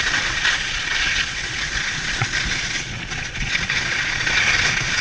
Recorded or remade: remade